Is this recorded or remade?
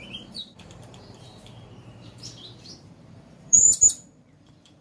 remade